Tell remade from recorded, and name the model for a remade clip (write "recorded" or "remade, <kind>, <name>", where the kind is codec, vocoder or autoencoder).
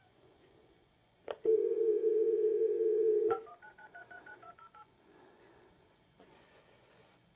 remade, vocoder, Vocos